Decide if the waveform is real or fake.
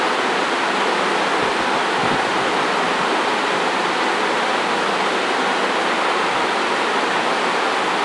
real